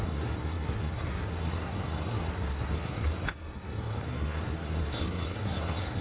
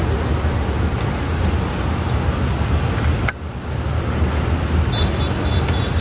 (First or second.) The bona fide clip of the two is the second